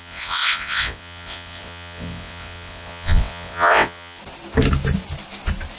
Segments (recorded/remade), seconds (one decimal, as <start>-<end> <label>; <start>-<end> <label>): 0.0-4.2 remade; 4.2-5.8 recorded